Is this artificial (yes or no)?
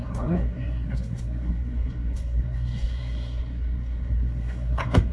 yes